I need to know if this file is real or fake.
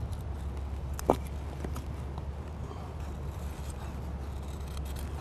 real